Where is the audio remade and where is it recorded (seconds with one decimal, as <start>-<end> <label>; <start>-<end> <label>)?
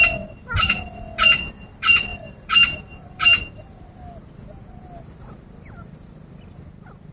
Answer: 0.0-2.1 recorded; 2.1-3.4 remade; 3.4-7.1 recorded